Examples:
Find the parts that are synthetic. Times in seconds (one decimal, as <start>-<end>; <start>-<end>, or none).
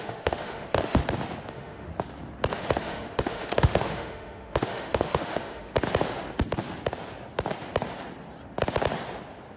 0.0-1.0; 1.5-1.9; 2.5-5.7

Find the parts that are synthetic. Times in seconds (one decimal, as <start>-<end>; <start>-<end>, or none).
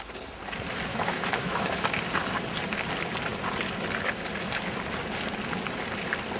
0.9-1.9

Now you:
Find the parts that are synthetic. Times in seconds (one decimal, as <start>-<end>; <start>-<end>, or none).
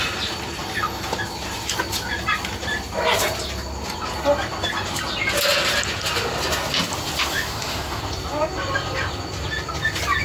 7.3-8.0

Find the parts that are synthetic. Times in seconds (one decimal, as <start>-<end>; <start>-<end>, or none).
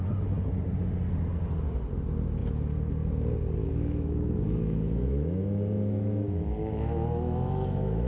3.6-8.1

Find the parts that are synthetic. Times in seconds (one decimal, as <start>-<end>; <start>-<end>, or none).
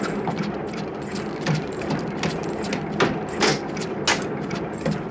none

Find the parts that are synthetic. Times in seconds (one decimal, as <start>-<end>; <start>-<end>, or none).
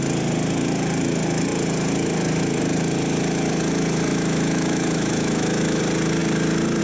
4.1-5.8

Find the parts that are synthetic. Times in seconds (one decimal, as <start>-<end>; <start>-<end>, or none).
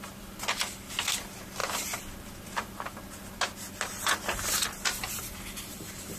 none